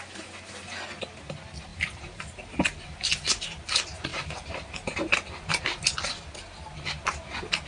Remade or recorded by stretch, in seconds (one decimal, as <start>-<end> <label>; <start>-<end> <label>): 0.0-1.7 recorded; 1.7-2.5 remade; 2.5-4.1 recorded; 4.1-5.6 remade; 5.6-7.7 recorded